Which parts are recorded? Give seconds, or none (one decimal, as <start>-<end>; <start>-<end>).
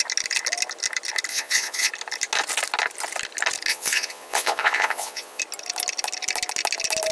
0.0-1.3; 1.9-3.7; 5.4-7.1